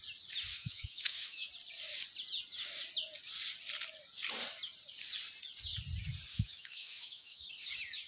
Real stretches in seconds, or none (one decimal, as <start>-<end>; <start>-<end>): 0.0-0.5; 1.5-6.3; 7.5-8.1